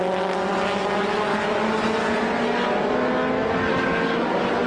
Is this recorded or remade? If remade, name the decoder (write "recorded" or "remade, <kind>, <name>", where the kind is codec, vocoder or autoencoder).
recorded